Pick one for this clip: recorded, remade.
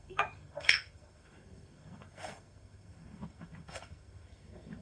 remade